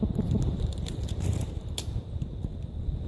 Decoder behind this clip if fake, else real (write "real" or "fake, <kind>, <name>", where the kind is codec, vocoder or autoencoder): fake, vocoder, BigVGAN v2